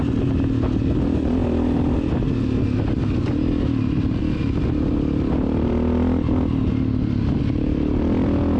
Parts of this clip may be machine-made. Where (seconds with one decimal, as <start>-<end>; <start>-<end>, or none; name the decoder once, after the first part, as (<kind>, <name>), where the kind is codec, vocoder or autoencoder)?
none

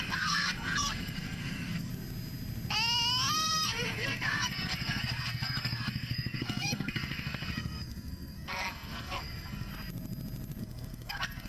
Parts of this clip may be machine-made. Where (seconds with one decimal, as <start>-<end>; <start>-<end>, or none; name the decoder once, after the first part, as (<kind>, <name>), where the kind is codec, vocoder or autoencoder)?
0.0-1.9 (codec, SNAC); 3.3-9.7; 10.6-11.5

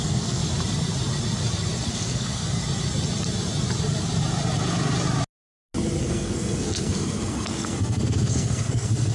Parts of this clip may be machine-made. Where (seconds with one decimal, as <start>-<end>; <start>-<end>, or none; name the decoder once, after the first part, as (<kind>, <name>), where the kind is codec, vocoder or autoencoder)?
0.0-0.4 (codec, SNAC); 1.9-2.6; 6.0-9.1